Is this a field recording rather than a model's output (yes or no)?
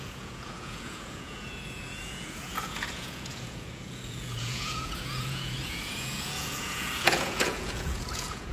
no